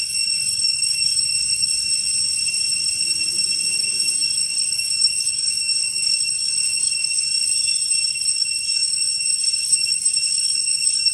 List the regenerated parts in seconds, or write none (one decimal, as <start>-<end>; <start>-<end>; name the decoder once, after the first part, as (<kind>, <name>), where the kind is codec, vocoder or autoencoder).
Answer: 0.0-1.7 (codec, DAC); 3.8-7.3; 8.1-11.1